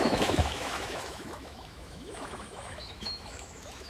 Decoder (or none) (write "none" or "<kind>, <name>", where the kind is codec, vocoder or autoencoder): autoencoder, DAC-VAE